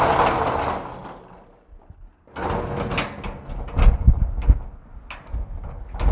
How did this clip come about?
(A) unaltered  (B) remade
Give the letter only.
A